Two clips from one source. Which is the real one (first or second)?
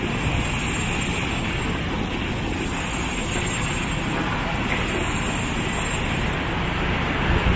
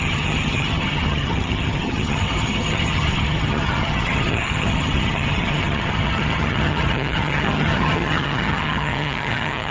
first